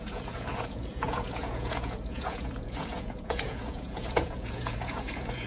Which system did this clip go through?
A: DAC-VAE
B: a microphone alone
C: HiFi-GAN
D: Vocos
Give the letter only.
D